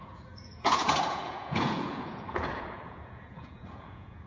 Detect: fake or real fake